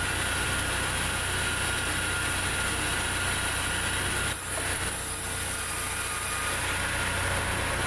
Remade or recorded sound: recorded